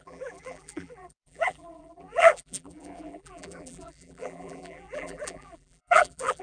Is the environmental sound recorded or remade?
remade